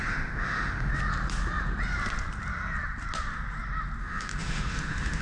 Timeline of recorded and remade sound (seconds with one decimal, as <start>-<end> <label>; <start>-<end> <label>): 0.0-0.9 remade; 0.9-4.0 recorded; 4.0-5.2 remade